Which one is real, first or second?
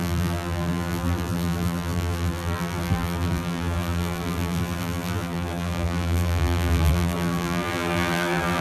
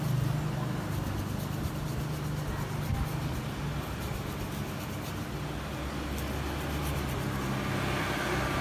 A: second